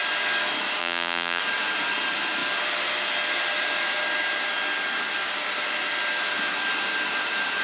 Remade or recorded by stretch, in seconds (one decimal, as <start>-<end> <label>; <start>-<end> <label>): 0.0-0.8 recorded; 0.8-1.4 remade; 1.4-7.6 recorded